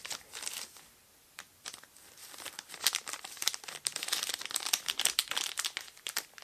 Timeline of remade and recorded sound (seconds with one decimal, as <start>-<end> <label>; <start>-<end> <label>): 0.0-6.4 recorded